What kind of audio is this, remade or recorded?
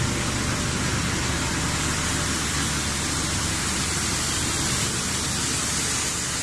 recorded